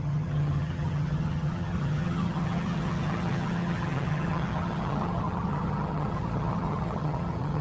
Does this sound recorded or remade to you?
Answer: remade